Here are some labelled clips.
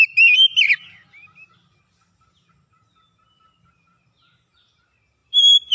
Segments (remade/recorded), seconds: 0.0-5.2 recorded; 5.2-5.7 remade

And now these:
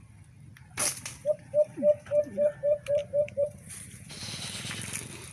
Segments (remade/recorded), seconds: 0.0-3.0 recorded; 3.0-4.1 remade; 4.1-5.3 recorded

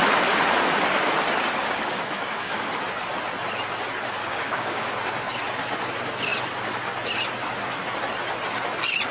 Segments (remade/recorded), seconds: 0.0-1.6 recorded; 1.6-2.8 remade; 2.8-4.2 recorded; 4.2-4.9 remade; 4.9-9.1 recorded

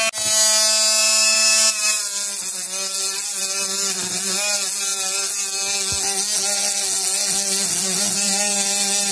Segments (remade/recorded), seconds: 0.0-1.0 recorded; 1.0-2.0 remade; 2.0-9.1 recorded